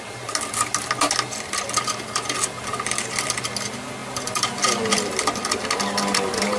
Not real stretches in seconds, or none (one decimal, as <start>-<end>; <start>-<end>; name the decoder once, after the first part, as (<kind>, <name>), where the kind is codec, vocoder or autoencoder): none